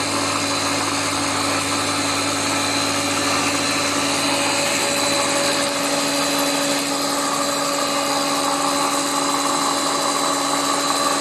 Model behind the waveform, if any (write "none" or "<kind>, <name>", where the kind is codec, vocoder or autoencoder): none